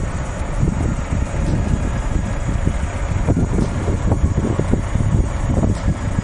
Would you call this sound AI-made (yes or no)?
no